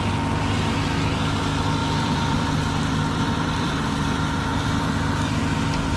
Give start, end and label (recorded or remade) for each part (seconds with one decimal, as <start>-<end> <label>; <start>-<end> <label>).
0.0-1.8 recorded; 1.8-5.4 remade; 5.4-6.0 recorded